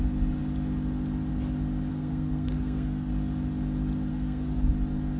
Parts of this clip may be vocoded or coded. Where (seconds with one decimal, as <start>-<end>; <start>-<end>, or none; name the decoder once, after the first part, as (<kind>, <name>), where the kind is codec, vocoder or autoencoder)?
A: 1.9-3.1 (codec, SNAC); 4.1-4.7

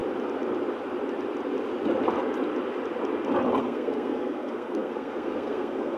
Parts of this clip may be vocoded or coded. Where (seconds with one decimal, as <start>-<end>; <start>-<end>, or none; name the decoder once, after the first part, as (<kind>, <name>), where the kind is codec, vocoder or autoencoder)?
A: 3.6-6.0 (codec, SNAC)

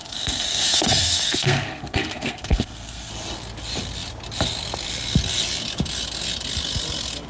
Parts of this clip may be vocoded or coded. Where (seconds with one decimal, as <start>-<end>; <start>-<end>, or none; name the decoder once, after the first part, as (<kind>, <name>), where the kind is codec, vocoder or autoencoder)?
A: 0.0-3.1 (codec, SNAC)

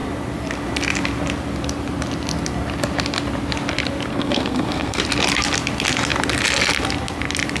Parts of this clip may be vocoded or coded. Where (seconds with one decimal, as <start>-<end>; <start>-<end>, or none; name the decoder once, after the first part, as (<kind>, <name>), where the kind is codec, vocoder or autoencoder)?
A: 4.1-5.0 (codec, SNAC)

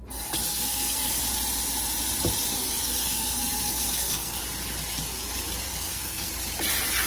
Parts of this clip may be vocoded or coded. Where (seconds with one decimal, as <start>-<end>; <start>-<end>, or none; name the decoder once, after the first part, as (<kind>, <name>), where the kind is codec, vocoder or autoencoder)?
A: 0.5-1.2 (codec, SNAC); 2.5-4.4; 5.7-6.3

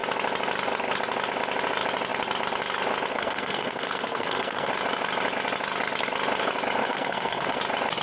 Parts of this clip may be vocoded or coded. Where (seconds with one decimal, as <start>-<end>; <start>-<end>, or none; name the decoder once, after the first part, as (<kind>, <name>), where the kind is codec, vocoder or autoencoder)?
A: 3.1-4.7 (codec, SNAC); 6.8-7.6